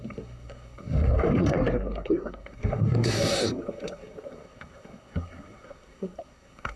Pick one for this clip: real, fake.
fake